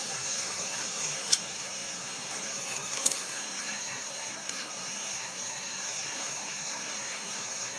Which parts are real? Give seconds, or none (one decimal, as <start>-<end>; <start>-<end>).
none